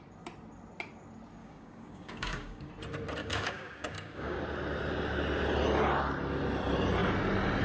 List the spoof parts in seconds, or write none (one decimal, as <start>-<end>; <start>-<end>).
1.4-2.7; 3.2-4.4